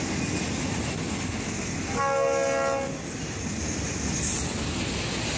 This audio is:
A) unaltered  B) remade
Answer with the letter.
A